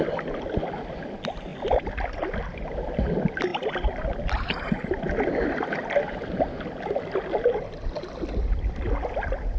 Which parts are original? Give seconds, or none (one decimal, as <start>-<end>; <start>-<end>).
0.0-9.6